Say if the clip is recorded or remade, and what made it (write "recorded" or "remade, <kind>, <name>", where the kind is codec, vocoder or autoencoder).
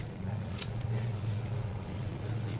remade, vocoder, Vocos